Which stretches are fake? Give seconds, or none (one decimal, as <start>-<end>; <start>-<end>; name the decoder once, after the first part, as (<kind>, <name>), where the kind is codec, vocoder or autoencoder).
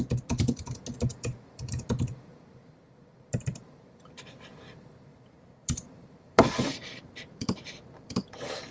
1.1-1.9 (vocoder, BigVGAN v2); 3.5-4.5; 5.1-8.7